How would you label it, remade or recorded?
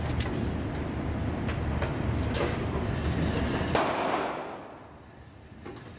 recorded